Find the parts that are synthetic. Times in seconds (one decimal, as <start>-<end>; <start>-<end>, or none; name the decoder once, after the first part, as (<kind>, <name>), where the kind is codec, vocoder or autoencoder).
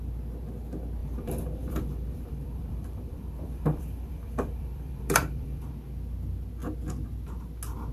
1.0-5.7 (vocoder, BigVGAN v2)